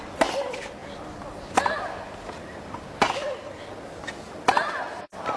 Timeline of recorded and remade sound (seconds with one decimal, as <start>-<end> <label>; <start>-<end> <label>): 0.0-5.4 recorded